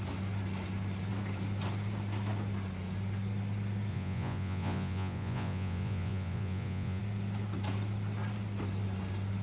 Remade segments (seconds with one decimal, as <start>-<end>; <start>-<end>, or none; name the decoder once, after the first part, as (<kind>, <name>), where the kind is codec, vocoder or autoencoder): 3.9-7.0 (vocoder, Vocos)